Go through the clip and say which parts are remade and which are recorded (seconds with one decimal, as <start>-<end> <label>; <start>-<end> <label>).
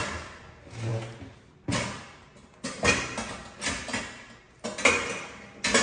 0.0-5.8 recorded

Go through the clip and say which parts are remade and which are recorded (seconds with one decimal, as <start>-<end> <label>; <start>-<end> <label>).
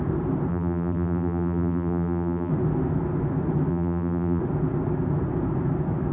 0.0-0.5 recorded; 0.5-2.5 remade; 2.5-3.7 recorded; 3.7-4.4 remade; 4.4-6.1 recorded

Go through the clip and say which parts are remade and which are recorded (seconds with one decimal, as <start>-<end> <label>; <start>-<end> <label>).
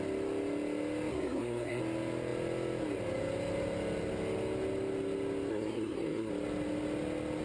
0.0-1.1 recorded; 1.1-1.8 remade; 1.8-5.5 recorded; 5.5-6.3 remade; 6.3-7.4 recorded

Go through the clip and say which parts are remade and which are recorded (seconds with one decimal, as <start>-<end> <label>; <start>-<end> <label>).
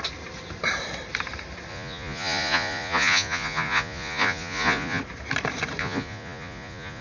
0.0-1.7 recorded; 1.7-5.0 remade; 5.0-5.8 recorded; 5.8-7.0 remade